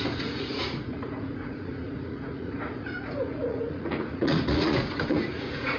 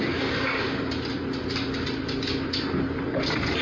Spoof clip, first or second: first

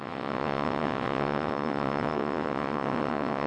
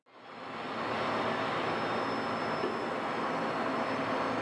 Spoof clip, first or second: first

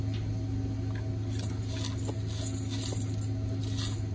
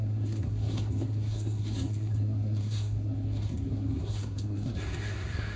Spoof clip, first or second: second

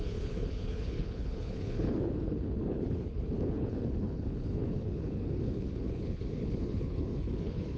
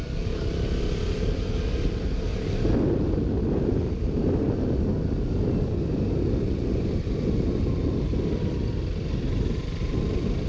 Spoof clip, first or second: first